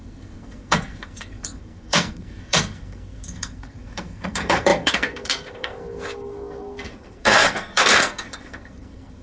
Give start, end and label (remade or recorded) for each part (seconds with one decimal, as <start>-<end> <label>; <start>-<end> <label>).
0.0-9.2 remade